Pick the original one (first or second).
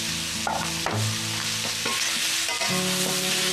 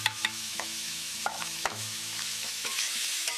first